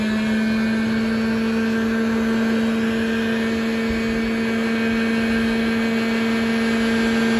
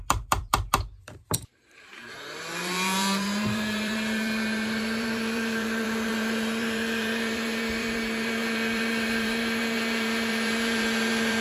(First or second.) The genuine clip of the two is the first